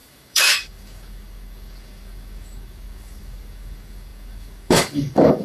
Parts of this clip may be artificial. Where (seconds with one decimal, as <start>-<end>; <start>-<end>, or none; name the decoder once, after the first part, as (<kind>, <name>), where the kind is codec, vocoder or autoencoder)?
0.0-5.4 (codec, DAC)